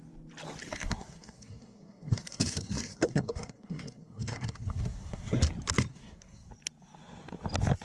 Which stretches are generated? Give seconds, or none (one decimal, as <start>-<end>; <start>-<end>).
0.7-5.4; 5.9-6.5